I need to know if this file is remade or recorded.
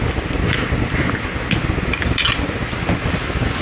recorded